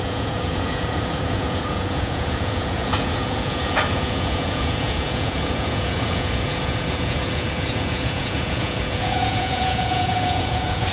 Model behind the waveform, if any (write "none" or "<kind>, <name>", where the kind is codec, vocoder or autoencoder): vocoder, Vocos